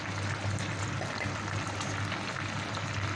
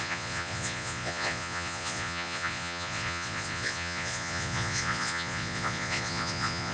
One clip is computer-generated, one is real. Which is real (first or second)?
first